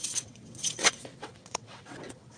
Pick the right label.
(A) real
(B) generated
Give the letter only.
B